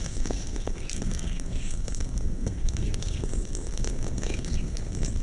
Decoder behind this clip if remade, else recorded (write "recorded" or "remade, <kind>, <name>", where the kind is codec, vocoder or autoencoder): remade, codec, SNAC